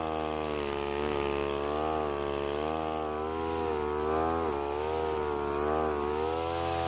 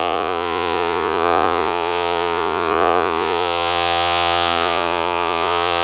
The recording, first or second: first